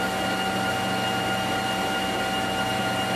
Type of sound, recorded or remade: recorded